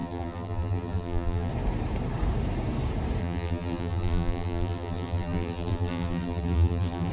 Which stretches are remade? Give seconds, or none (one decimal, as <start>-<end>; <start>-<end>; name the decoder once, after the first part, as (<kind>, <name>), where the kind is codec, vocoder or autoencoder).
0.0-1.5 (vocoder, BigVGAN v2); 3.2-7.1